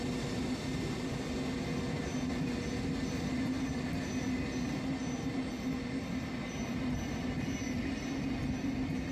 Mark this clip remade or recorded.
recorded